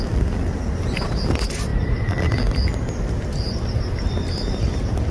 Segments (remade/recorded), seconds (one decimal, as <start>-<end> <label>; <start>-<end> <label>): 0.0-1.7 recorded; 1.7-4.1 remade; 4.1-5.1 recorded